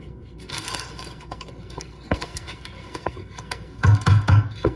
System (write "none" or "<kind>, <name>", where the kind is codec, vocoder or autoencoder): codec, SNAC